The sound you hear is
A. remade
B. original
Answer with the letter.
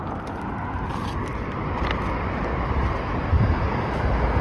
B